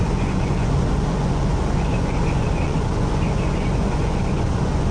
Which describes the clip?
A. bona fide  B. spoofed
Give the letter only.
B